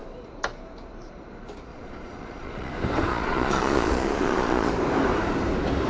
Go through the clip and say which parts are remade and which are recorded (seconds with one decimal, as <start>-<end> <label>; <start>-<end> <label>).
0.0-1.7 recorded; 1.7-2.7 remade; 2.7-3.1 recorded; 3.1-4.7 remade; 4.7-5.9 recorded